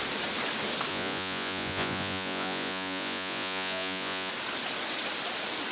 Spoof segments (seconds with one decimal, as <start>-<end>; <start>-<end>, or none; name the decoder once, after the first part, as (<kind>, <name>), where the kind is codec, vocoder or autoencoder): 0.9-4.3 (vocoder, Vocos)